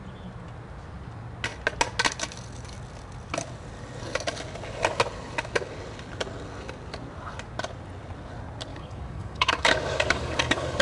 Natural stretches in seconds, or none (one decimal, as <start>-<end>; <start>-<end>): 0.0-8.7

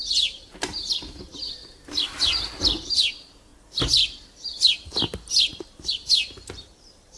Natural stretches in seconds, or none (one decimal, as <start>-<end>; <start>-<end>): 3.5-5.4